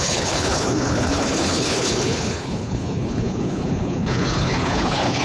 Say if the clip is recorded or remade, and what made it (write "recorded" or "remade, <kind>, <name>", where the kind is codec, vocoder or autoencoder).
remade, codec, HILCodec